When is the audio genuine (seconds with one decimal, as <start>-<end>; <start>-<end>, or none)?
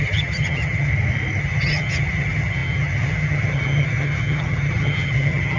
0.9-1.4